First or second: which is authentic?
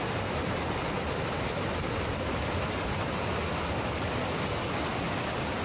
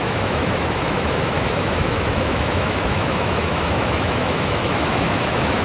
first